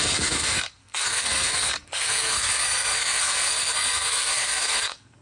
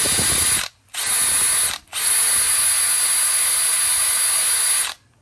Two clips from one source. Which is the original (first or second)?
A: second